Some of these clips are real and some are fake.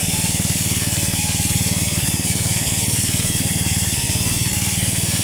fake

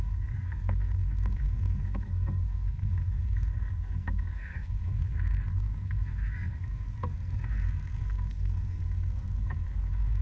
fake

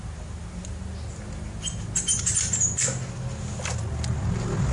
real